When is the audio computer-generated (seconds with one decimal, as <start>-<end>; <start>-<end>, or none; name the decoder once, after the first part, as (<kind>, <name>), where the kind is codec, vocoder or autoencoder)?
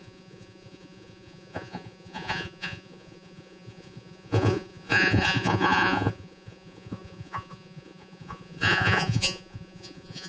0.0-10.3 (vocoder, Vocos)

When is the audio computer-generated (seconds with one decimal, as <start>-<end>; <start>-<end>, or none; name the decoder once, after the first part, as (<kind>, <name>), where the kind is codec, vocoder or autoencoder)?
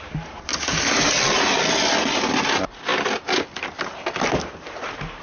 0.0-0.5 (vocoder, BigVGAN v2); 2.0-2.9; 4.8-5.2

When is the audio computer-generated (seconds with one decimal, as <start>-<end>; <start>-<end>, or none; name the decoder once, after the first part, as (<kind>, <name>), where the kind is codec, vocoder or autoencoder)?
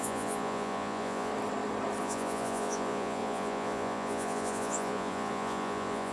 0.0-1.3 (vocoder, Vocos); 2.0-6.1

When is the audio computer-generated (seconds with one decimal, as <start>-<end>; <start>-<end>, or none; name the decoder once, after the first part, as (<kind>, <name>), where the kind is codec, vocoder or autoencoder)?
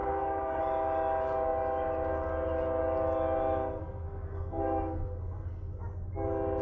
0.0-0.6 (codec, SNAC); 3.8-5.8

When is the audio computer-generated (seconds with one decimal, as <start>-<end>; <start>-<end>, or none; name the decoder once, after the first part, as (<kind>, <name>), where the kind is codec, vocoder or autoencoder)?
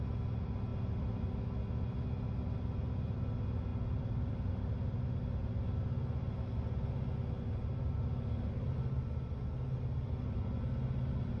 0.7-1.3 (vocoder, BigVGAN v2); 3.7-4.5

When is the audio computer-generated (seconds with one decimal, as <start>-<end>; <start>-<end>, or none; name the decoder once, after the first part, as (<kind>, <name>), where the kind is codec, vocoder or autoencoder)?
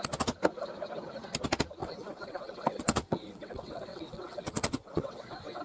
1.8-5.6 (vocoder, WaveNeXt)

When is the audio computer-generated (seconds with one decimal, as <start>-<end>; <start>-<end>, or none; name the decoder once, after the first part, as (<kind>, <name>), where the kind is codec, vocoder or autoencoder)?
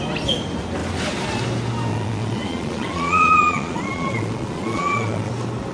1.9-5.3 (vocoder, Vocos)